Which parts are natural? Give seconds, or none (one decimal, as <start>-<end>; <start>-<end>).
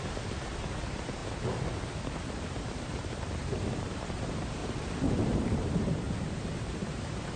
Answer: 1.2-2.1; 4.6-5.2